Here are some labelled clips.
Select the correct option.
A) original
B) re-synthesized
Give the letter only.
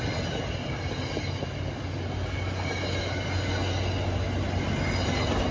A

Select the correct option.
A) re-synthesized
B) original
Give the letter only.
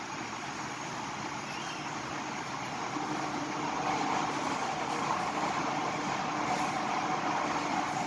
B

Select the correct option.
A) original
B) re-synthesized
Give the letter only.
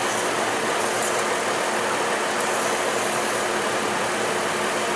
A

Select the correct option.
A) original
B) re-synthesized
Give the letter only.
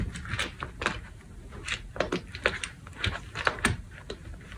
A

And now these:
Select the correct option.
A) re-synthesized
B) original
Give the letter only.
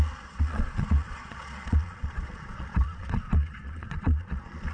A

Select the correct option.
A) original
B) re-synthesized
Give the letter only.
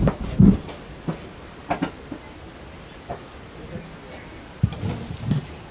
A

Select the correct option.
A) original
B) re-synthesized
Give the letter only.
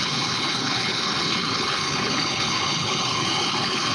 B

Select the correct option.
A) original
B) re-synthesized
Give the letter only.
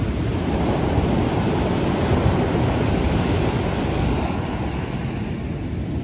A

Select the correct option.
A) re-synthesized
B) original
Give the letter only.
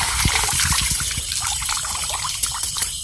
A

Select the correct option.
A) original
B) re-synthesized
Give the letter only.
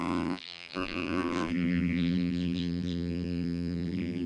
B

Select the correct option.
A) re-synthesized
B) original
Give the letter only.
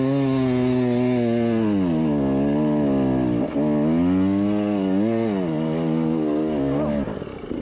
B